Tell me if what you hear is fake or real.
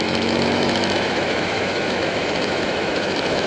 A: fake